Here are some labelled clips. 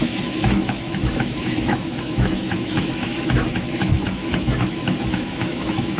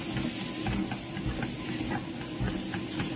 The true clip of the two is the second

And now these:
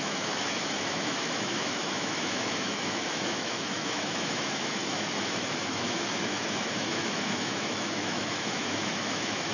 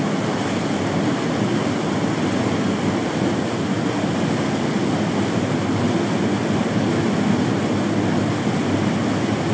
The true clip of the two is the second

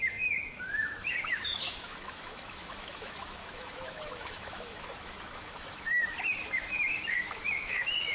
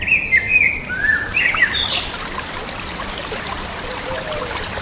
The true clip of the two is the second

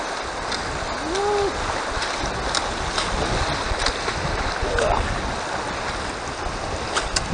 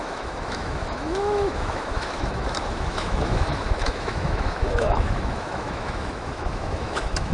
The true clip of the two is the first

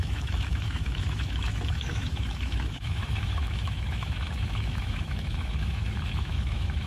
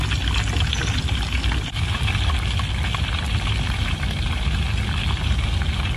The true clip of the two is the second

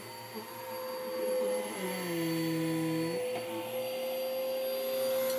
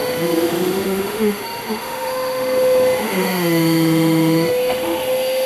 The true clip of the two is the first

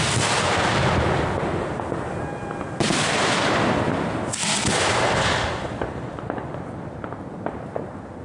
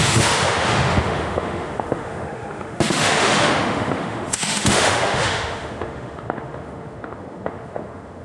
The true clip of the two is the first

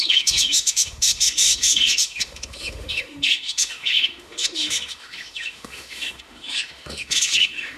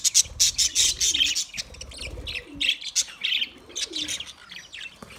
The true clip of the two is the second